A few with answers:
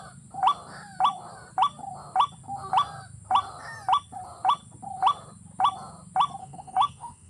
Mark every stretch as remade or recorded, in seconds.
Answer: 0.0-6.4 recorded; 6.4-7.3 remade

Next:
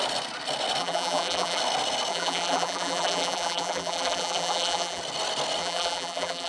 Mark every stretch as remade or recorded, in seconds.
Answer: 0.0-0.8 recorded; 0.8-1.6 remade; 1.6-2.1 recorded; 2.1-5.0 remade; 5.0-5.6 recorded; 5.6-6.5 remade

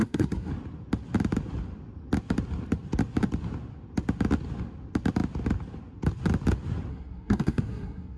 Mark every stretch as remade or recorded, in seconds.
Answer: 0.0-0.5 remade; 0.5-6.9 recorded; 6.9-8.2 remade

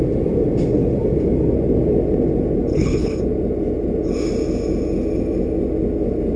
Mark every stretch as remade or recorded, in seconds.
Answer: 0.0-2.7 recorded; 2.7-3.2 remade; 3.2-6.4 recorded